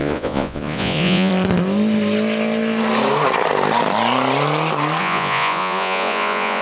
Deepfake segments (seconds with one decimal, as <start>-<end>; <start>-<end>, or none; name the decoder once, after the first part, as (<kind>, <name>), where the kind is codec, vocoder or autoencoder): 0.0-1.3 (vocoder, Vocos); 5.0-6.6